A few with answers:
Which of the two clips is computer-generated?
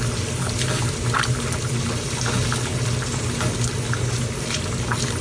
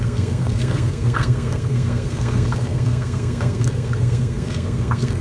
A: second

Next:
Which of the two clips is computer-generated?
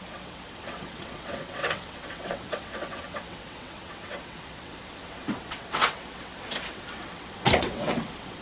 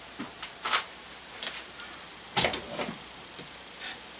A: first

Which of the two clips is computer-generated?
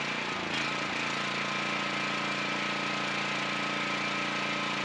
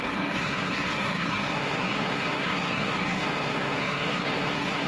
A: second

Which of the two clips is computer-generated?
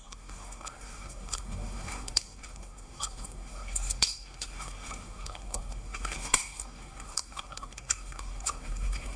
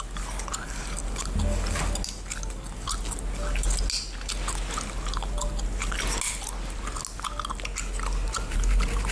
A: first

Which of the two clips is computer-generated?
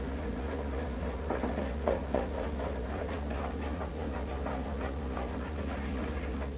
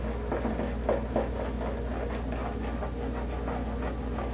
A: first